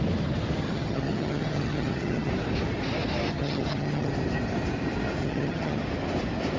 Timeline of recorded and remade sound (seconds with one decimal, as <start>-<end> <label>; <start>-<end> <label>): 0.0-0.6 recorded; 0.6-2.3 remade; 2.3-3.3 recorded; 3.3-4.1 remade; 4.1-5.2 recorded; 5.2-5.8 remade; 5.8-6.6 recorded